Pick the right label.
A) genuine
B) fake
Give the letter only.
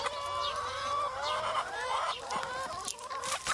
A